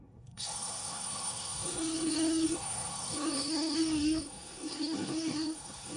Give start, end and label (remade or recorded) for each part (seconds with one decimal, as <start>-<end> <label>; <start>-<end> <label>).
0.0-6.0 remade